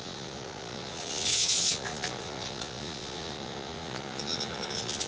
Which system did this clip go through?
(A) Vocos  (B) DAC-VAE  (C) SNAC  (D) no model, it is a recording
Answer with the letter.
A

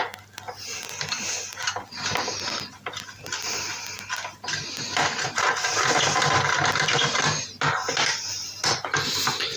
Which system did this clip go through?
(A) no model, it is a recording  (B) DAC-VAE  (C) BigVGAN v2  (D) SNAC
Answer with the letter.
A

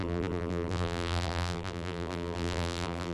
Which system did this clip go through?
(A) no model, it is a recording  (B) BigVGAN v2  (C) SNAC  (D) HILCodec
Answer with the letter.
B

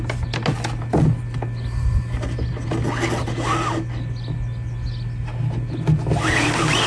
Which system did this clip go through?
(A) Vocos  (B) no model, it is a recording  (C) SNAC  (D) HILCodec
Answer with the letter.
B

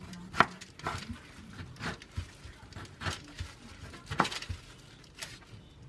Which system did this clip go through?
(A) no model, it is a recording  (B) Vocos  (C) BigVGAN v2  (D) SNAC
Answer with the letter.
A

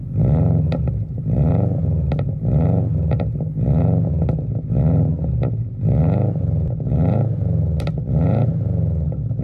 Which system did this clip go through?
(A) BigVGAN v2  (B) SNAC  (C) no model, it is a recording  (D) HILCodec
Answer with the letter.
C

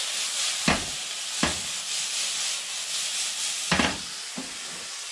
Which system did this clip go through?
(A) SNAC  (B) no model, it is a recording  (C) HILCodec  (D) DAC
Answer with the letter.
B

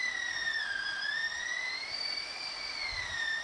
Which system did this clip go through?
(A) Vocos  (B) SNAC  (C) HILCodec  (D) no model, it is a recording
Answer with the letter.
D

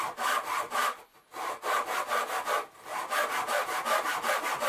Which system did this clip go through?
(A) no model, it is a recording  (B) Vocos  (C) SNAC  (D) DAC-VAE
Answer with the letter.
A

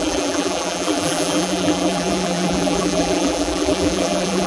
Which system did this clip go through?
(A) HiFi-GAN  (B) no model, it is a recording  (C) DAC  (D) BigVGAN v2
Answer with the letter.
D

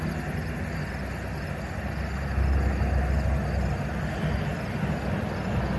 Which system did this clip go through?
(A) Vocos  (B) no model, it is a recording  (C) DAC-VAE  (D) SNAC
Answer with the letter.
B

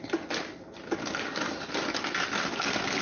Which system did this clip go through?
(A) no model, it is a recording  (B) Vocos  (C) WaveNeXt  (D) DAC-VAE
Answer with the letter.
A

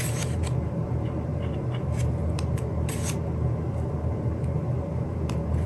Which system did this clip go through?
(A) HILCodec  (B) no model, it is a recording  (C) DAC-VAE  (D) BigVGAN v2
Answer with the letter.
B